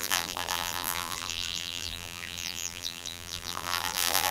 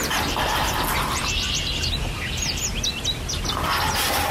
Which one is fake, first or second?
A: first